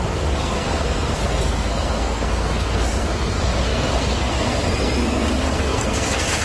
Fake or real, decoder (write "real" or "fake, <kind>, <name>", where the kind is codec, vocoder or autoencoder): fake, codec, SNAC